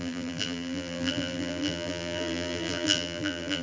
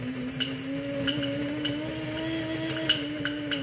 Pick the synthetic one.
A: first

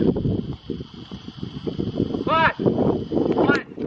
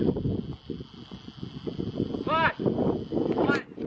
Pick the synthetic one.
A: first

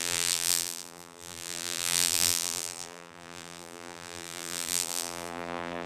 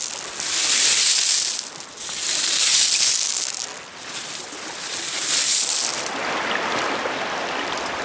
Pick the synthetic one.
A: first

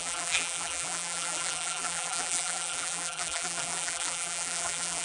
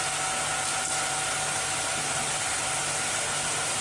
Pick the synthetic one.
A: first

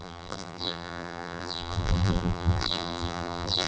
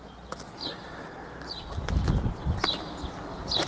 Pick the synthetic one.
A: first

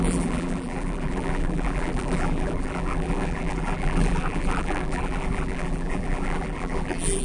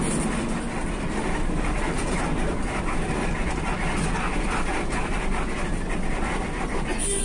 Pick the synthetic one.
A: first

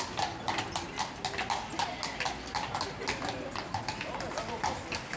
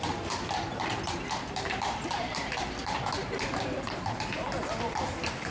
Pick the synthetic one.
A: second